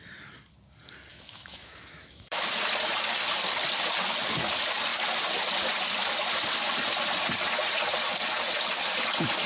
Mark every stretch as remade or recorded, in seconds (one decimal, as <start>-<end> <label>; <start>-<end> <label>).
0.0-1.1 recorded; 1.1-2.5 remade; 2.5-9.5 recorded